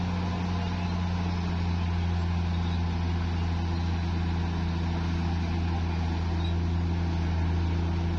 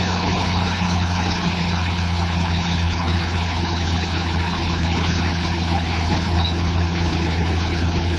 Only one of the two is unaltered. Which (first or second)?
first